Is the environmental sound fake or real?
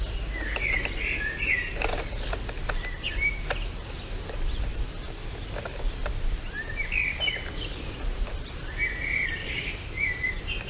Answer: real